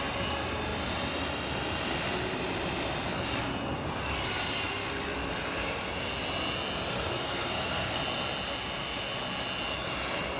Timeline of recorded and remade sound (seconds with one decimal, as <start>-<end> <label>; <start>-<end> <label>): 0.0-6.9 recorded; 6.9-8.0 remade; 8.0-10.4 recorded